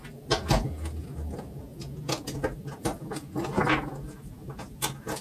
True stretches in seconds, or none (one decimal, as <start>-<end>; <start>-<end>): 0.0-5.2